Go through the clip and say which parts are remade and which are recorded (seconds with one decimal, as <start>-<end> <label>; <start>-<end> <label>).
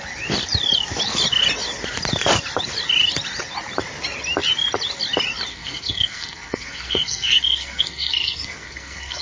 0.0-5.5 recorded; 5.5-9.2 remade